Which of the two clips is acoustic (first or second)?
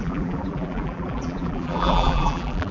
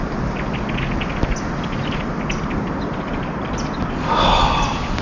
second